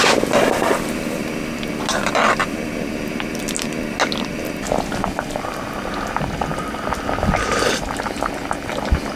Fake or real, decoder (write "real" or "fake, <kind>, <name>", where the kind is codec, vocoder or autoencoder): real